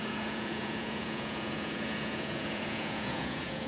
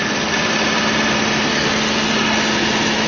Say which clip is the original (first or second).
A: second